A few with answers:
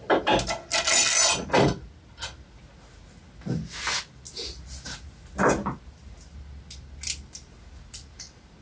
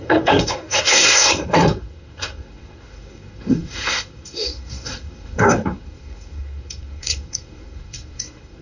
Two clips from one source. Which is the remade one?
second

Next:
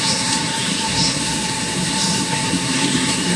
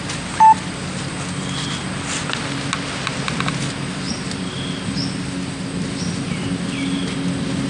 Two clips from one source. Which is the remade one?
first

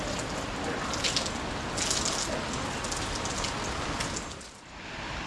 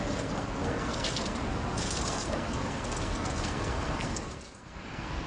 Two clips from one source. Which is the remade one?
second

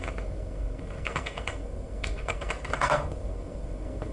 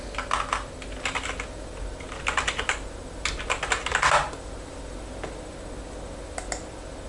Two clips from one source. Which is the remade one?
first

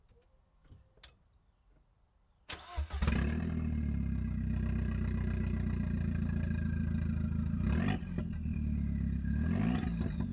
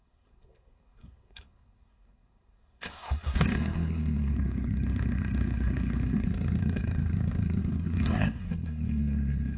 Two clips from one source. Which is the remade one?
second